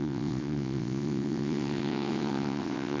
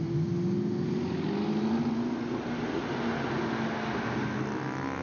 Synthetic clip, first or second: first